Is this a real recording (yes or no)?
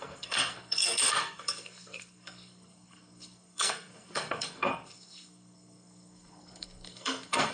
no